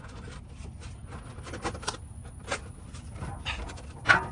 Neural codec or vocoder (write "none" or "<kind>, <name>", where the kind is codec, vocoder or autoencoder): none